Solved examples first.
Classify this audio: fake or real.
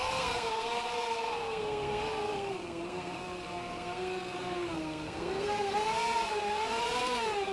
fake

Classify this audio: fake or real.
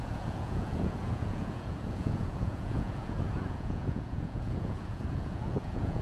fake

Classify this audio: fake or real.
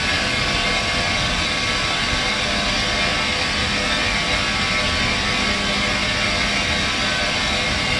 real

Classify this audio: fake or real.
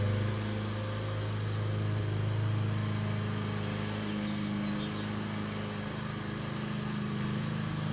real